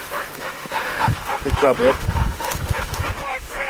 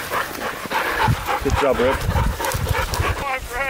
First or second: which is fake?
first